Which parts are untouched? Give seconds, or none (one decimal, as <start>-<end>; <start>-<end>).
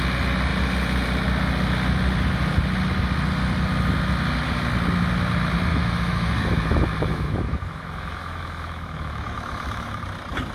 0.0-5.7; 10.0-10.5